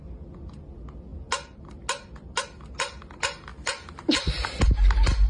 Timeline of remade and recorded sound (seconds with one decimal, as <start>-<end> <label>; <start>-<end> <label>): 0.0-5.3 recorded